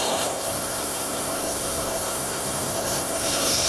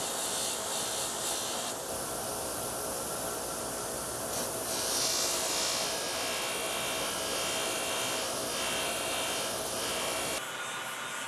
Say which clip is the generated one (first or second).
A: first